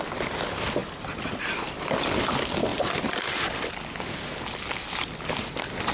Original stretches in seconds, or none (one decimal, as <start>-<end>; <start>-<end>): 0.0-0.8; 1.4-2.7; 3.5-5.9